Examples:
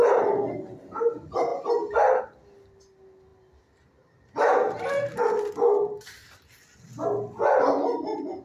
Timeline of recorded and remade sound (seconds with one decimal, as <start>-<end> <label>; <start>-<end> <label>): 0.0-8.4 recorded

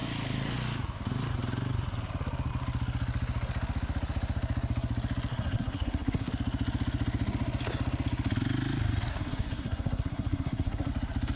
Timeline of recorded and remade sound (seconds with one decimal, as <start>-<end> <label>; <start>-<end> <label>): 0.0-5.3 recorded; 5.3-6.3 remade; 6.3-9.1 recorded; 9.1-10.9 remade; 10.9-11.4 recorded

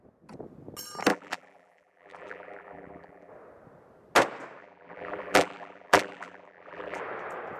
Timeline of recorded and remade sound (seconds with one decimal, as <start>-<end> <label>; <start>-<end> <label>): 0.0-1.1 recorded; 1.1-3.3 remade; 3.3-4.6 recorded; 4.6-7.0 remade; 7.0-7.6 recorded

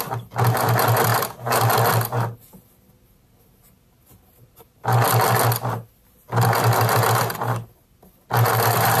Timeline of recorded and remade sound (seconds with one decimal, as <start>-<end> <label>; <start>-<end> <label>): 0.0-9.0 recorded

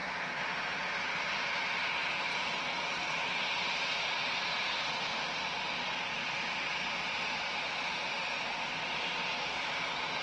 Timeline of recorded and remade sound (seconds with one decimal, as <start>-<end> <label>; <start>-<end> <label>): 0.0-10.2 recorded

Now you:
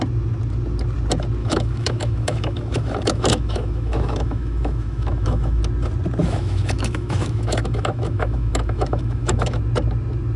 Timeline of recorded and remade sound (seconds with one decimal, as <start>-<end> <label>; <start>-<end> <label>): 0.0-1.4 recorded; 1.4-5.6 remade; 5.6-6.2 recorded; 6.2-9.6 remade; 9.6-10.4 recorded

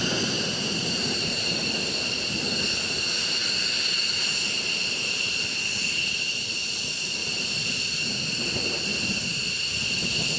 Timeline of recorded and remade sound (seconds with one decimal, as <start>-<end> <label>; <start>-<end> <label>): 0.0-1.6 remade; 1.6-7.2 recorded; 7.2-8.0 remade; 8.0-8.9 recorded; 8.9-9.6 remade; 9.6-10.4 recorded

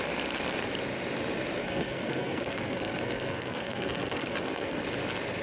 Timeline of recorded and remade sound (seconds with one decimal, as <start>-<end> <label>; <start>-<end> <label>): 0.0-1.6 recorded; 1.6-4.8 remade; 4.8-5.4 recorded